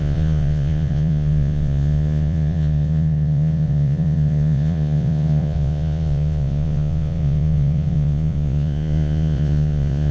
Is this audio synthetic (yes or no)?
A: yes